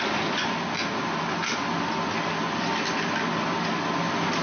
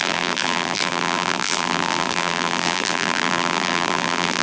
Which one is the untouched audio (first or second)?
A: first